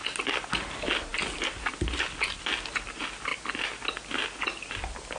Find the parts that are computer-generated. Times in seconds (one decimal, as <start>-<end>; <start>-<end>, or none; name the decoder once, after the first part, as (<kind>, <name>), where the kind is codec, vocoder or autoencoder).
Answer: none